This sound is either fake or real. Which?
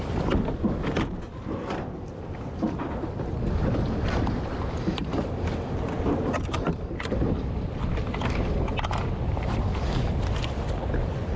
real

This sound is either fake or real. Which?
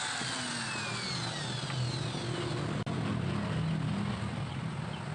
real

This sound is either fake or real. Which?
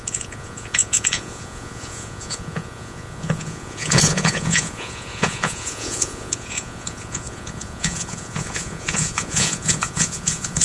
fake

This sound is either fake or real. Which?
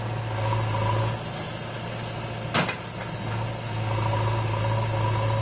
real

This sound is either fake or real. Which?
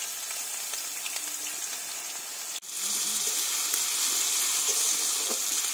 real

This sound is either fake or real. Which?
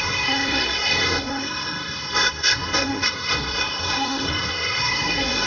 fake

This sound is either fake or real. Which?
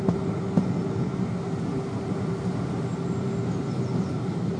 real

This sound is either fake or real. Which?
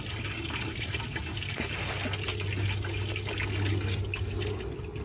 real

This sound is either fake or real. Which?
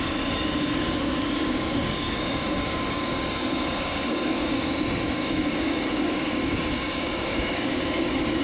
fake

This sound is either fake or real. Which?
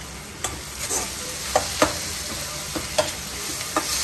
real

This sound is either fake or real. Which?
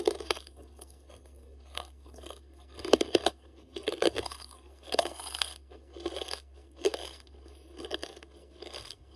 fake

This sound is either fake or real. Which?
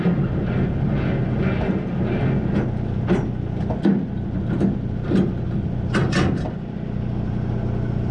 real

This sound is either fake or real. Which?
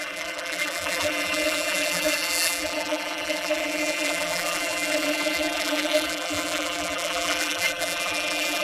fake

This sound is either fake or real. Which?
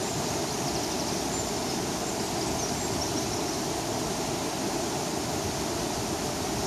real